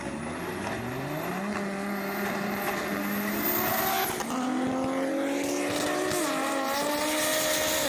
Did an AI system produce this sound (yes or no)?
no